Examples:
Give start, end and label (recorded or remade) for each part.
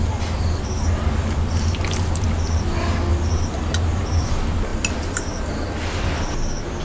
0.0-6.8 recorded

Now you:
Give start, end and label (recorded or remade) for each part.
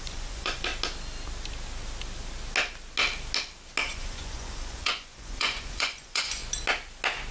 0.0-0.7 remade; 0.7-3.8 recorded; 3.8-6.4 remade; 6.4-7.3 recorded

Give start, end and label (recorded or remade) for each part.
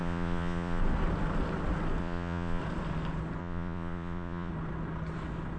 0.0-0.8 remade; 0.8-2.0 recorded; 2.0-2.6 remade; 2.6-3.4 recorded; 3.4-4.5 remade; 4.5-5.6 recorded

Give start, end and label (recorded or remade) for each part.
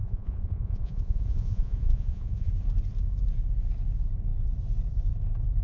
0.0-2.5 remade; 2.5-5.6 recorded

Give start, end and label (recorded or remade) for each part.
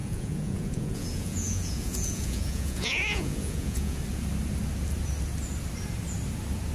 0.0-4.0 remade; 4.0-6.7 recorded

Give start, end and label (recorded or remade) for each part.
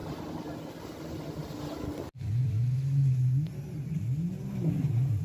0.0-5.2 recorded